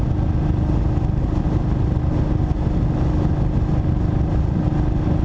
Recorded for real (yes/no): yes